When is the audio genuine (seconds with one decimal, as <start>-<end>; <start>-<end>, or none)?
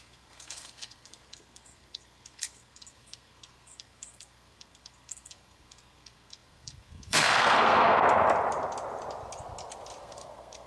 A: 8.1-10.0